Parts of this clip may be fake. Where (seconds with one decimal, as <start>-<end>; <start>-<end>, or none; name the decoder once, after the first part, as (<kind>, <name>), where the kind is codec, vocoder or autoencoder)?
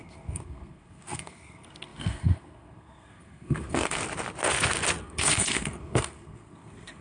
0.0-4.0 (codec, SNAC); 5.0-7.0